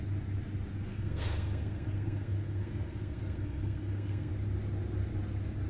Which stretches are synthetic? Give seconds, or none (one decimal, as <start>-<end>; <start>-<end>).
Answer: 0.9-4.3